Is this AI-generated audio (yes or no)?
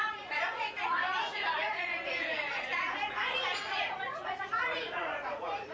yes